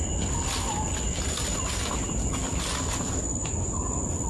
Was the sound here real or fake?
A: real